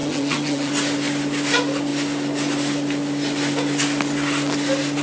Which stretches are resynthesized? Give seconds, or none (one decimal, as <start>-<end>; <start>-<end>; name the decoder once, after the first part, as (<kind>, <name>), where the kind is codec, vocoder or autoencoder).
0.0-0.7 (vocoder, HiFi-GAN)

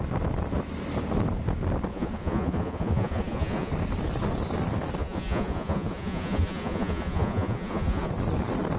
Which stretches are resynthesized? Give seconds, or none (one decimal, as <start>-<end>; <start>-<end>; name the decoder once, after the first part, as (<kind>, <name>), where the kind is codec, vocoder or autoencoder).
1.9-3.7 (vocoder, Vocos); 5.0-8.1

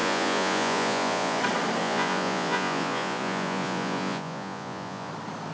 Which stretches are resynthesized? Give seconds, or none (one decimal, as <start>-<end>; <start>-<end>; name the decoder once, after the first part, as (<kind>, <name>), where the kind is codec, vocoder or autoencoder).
0.0-1.4 (vocoder, Vocos); 1.8-5.1

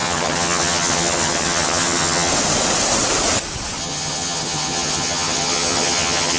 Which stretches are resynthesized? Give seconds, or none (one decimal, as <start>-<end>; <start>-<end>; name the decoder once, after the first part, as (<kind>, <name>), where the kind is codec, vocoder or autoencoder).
0.0-2.3 (vocoder, HiFi-GAN); 3.8-6.4

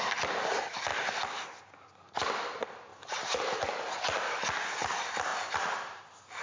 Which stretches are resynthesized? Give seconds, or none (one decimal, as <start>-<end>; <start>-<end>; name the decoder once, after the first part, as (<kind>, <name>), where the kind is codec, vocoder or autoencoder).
2.9-3.6 (vocoder, BigVGAN v2); 5.3-6.0

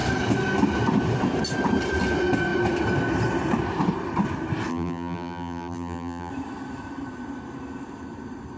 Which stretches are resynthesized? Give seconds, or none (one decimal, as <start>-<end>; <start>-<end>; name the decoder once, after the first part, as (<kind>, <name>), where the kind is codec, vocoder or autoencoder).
4.7-6.3 (vocoder, BigVGAN v2)